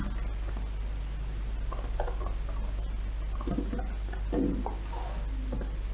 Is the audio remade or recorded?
recorded